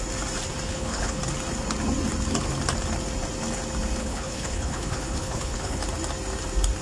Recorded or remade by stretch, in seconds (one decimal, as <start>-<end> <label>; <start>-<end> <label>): 0.0-0.7 recorded; 0.7-1.2 remade; 1.2-4.0 recorded; 4.0-5.8 remade; 5.8-6.8 recorded